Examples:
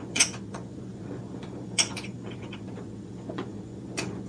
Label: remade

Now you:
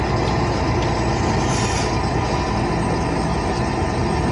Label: recorded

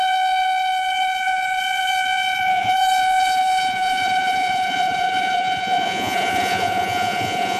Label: remade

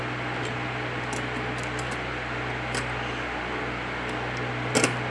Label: recorded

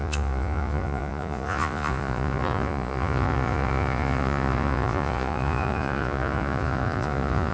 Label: remade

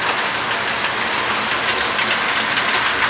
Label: recorded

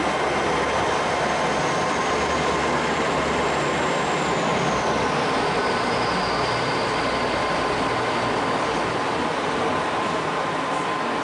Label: recorded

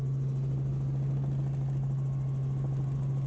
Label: recorded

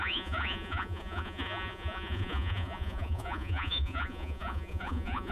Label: remade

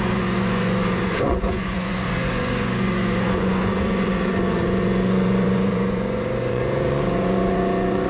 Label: remade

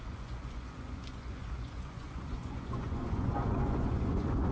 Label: remade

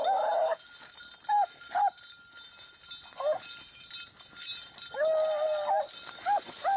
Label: recorded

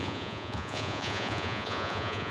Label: remade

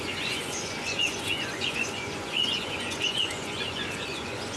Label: remade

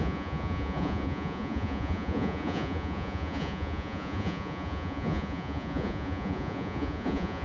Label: remade